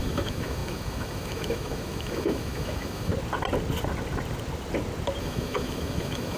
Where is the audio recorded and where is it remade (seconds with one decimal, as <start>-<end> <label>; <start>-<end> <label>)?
0.0-3.1 remade; 3.1-5.2 recorded; 5.2-6.4 remade